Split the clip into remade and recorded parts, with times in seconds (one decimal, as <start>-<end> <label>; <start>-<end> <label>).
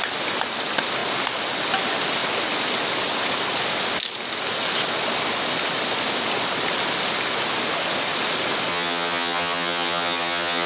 0.0-8.7 recorded; 8.7-10.7 remade